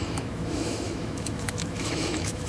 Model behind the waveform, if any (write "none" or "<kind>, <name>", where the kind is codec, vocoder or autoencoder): autoencoder, DAC-VAE